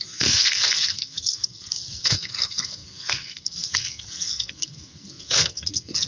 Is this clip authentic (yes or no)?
no